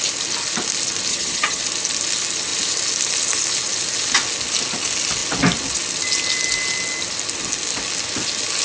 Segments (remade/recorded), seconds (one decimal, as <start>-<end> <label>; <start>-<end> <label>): 0.0-1.1 recorded; 1.1-1.6 remade; 1.6-8.6 recorded